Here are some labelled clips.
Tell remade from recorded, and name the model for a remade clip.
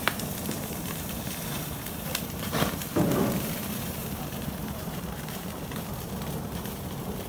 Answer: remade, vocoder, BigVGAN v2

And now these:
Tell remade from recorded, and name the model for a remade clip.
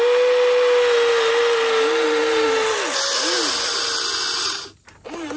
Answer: recorded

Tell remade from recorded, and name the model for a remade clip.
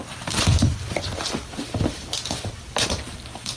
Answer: remade, vocoder, BigVGAN v2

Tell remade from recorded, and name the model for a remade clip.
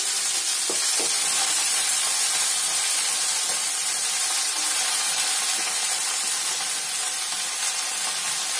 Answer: recorded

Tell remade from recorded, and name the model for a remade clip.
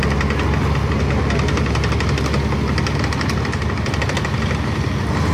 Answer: recorded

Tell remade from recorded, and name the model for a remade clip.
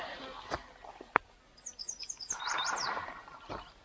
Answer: recorded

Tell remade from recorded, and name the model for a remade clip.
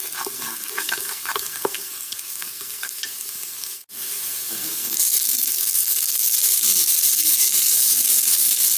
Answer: remade, codec, SNAC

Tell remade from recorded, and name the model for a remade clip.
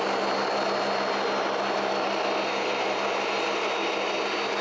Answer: recorded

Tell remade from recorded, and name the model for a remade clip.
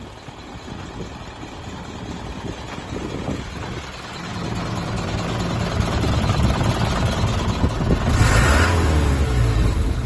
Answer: recorded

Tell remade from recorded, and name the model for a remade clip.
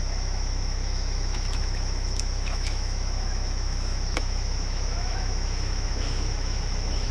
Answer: remade, autoencoder, DAC-VAE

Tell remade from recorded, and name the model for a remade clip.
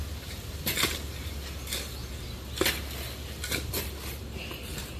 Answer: recorded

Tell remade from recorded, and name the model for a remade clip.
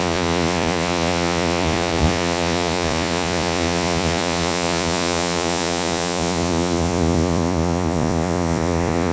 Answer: remade, vocoder, Vocos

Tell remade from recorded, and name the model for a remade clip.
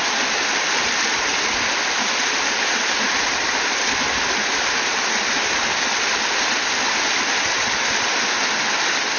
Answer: recorded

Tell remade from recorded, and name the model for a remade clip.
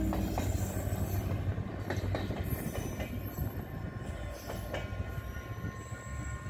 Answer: recorded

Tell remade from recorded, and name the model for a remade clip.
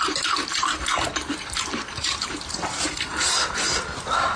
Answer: remade, vocoder, BigVGAN v2